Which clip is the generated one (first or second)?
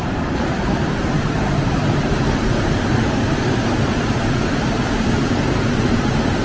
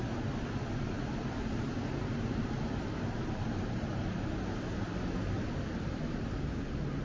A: first